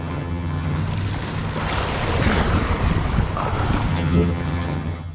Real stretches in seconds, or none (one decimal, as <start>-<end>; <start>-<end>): 0.8-3.9

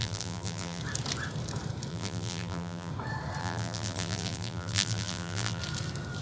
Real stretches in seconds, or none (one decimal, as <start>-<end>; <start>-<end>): 0.8-1.9; 2.9-3.4; 5.6-6.2

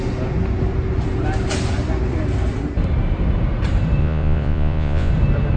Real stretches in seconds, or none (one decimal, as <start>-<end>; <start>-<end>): 0.0-4.0; 5.1-5.6

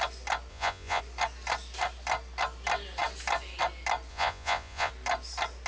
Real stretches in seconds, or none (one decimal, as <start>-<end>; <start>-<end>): 0.0-0.5; 1.0-4.1; 4.9-5.7

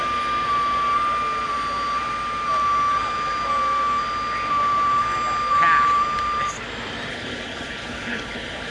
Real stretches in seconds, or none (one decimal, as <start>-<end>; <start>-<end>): 0.0-7.1

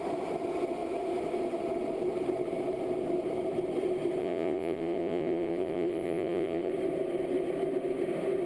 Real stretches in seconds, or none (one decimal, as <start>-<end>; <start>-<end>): 0.0-4.2; 6.7-8.5

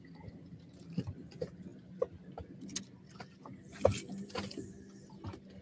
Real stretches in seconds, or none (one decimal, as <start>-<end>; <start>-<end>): 0.0-5.6

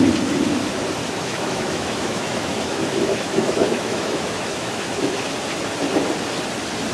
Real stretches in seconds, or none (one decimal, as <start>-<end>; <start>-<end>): 0.0-1.0; 5.1-6.9